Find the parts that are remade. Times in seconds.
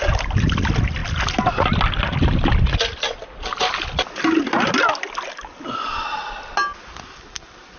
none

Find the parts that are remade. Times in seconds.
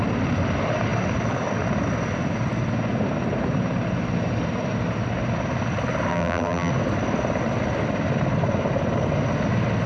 6.1-6.7 (vocoder, BigVGAN v2)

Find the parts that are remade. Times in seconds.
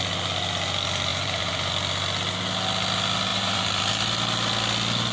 1.1-1.7 (vocoder, BigVGAN v2); 3.3-4.0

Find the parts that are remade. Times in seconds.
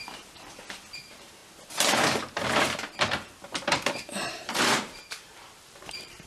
0.9-1.4 (vocoder, BigVGAN v2); 2.2-6.3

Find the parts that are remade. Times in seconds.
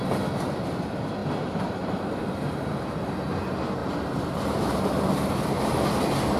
3.8-4.8 (vocoder, BigVGAN v2)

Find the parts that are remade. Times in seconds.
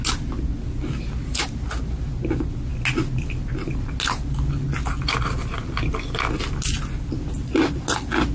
none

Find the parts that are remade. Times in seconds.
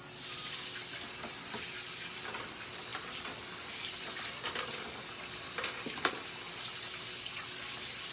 2.9-4.9 (vocoder, BigVGAN v2)